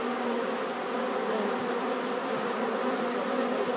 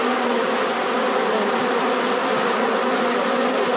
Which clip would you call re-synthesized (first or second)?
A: second